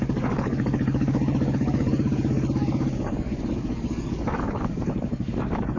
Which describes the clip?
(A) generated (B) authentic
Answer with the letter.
A